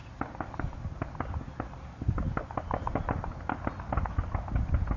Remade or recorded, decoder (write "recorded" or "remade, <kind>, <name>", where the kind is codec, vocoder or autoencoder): recorded